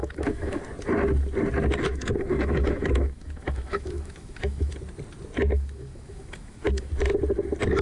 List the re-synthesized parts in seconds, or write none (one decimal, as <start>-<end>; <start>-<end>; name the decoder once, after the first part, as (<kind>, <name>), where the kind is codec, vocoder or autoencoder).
0.0-0.6 (autoencoder, DAC-VAE); 1.9-4.7; 5.5-6.9